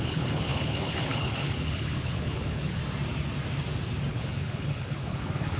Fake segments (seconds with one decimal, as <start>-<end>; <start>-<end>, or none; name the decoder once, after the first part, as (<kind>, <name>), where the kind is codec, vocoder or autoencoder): 0.0-2.8 (codec, HILCodec); 4.1-5.6